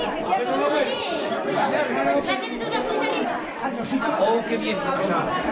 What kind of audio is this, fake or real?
real